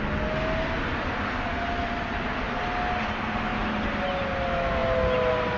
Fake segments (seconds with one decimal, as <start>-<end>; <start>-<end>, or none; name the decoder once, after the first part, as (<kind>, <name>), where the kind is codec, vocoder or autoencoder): none